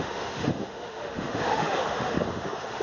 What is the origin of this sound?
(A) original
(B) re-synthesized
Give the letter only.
B